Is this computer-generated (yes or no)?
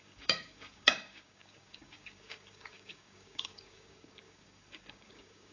yes